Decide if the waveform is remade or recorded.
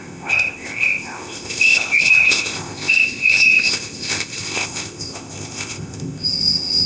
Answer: remade